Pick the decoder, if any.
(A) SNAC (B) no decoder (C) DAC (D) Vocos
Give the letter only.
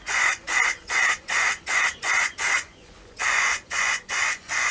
D